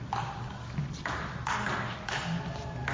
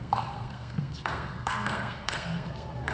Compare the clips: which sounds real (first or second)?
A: first